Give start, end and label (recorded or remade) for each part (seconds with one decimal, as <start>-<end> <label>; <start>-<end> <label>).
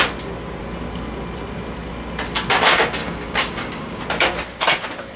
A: 0.0-3.0 recorded; 3.0-4.0 remade; 4.0-5.2 recorded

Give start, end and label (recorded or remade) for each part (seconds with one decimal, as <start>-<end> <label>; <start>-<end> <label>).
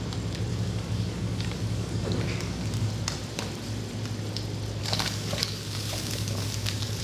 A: 0.0-0.5 recorded; 0.5-2.9 remade; 2.9-4.8 recorded; 4.8-7.0 remade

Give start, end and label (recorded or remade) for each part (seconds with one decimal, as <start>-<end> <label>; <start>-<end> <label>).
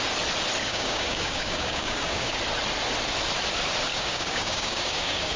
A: 0.0-0.6 recorded; 0.6-2.4 remade; 2.4-3.9 recorded; 3.9-5.4 remade